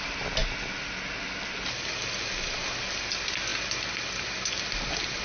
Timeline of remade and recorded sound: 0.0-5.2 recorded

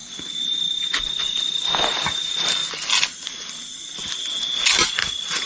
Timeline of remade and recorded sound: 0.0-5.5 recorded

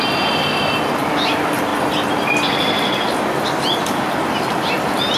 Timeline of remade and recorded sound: 0.0-5.2 recorded

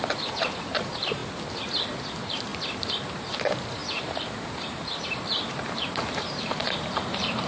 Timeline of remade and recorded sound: 0.0-1.2 remade; 1.2-2.0 recorded; 2.0-2.5 remade; 2.5-3.2 recorded; 3.2-7.5 remade

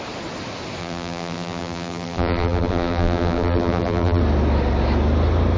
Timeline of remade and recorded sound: 0.0-0.8 recorded; 0.8-4.2 remade; 4.2-5.6 recorded

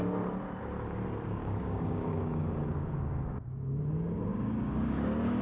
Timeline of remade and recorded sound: 0.0-1.4 recorded; 1.4-3.8 remade; 3.8-4.3 recorded; 4.3-5.4 remade

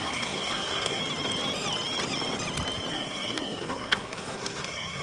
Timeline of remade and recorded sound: 0.0-1.0 remade; 1.0-2.9 recorded; 2.9-5.0 remade